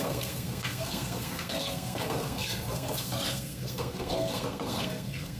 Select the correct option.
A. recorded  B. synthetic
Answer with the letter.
B